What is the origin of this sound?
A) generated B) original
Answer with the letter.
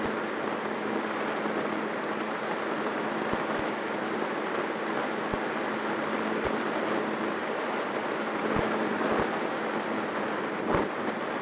B